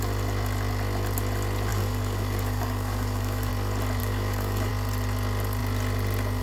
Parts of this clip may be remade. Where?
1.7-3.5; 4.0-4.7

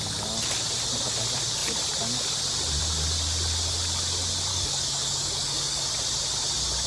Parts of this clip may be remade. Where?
4.5-5.9